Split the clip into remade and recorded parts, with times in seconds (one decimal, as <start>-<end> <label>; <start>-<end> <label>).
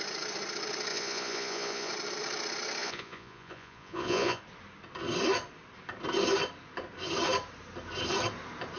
0.0-0.9 recorded; 0.9-1.9 remade; 1.9-2.8 recorded; 2.8-4.4 remade; 4.4-8.8 recorded